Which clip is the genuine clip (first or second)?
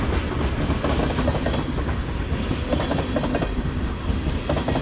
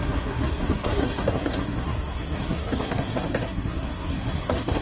first